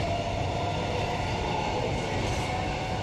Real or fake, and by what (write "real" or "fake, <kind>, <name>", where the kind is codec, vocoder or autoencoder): real